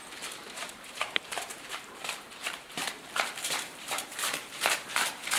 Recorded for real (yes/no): no